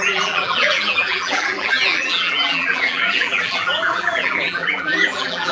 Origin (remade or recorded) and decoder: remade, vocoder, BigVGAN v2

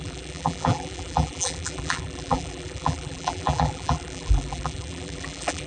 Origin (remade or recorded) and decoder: remade, vocoder, BigVGAN v2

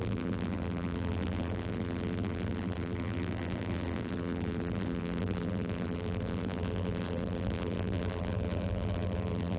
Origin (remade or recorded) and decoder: remade, vocoder, BigVGAN v2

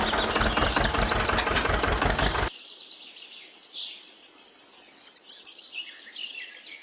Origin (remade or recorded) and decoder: recorded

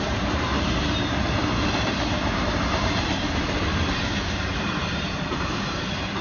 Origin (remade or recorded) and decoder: remade, vocoder, BigVGAN v2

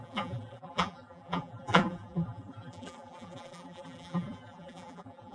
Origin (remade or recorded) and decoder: remade, vocoder, BigVGAN v2